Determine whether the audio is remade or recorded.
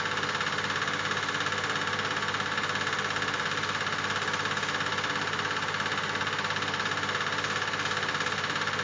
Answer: recorded